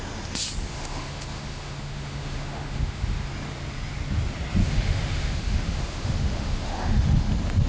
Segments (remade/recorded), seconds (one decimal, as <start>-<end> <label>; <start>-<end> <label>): 0.0-0.7 recorded; 0.7-3.3 remade; 3.3-4.6 recorded; 4.6-7.3 remade; 7.3-7.7 recorded